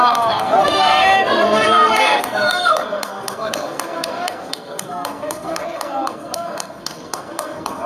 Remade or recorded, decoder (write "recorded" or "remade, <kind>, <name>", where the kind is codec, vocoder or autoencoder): remade, codec, SNAC